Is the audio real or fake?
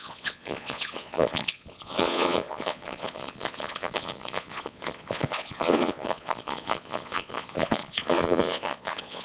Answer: fake